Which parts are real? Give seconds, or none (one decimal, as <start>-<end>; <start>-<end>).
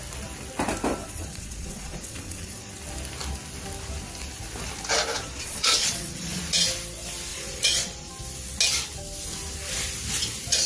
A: 0.0-1.0; 2.7-5.2; 6.4-7.3; 8.1-10.7